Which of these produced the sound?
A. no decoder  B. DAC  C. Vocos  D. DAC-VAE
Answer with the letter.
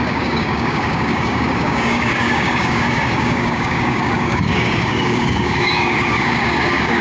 B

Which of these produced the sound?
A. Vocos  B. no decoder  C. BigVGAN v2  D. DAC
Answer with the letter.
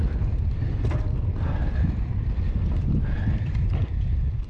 B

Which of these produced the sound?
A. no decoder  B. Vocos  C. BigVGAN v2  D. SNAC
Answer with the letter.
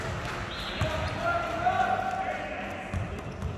A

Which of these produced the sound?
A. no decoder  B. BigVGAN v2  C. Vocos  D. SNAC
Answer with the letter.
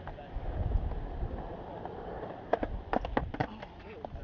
A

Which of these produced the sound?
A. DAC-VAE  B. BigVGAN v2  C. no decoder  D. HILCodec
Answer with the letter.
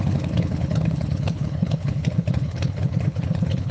D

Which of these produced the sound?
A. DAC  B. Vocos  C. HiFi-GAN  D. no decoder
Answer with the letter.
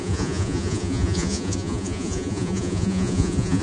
B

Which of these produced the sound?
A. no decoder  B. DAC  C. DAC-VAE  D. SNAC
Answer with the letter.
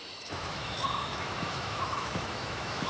C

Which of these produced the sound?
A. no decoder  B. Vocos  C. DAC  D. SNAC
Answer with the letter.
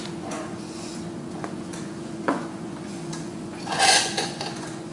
B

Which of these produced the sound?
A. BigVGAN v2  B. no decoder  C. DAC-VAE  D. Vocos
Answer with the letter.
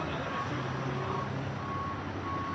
B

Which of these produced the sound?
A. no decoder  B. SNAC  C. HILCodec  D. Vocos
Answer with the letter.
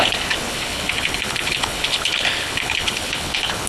C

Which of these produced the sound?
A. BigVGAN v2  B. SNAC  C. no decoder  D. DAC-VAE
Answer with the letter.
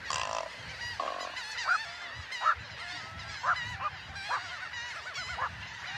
C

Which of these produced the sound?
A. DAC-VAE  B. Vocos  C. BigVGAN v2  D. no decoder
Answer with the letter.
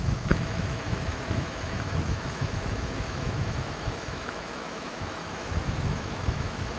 A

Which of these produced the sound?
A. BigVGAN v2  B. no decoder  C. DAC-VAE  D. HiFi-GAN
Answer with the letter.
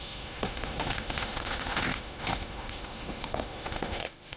C